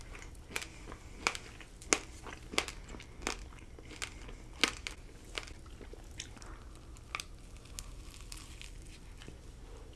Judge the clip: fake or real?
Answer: real